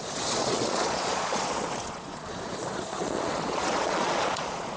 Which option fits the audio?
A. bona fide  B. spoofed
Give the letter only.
B